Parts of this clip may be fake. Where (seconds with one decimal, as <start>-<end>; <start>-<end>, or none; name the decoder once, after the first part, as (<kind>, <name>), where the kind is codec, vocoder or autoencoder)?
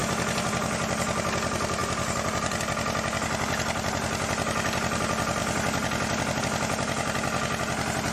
1.8-2.6 (vocoder, BigVGAN v2)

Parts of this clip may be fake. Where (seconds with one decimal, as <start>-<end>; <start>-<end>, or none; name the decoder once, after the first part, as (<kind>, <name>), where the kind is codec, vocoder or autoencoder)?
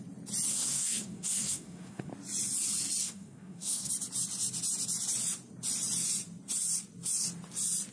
0.5-2.1 (codec, SNAC); 3.0-3.9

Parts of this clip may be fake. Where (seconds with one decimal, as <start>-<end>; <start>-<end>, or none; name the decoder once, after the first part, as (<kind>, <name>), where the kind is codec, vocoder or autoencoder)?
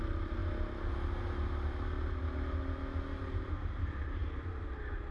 none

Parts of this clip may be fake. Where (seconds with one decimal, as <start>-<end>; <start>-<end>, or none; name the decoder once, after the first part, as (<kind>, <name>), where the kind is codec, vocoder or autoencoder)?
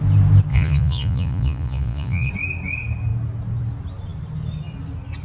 0.5-2.3 (vocoder, Vocos)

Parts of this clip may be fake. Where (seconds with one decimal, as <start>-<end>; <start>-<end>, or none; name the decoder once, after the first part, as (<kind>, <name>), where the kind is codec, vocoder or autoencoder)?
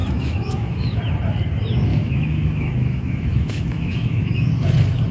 0.0-1.0 (autoencoder, DAC-VAE); 1.9-4.5